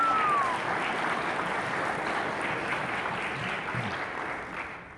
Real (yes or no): yes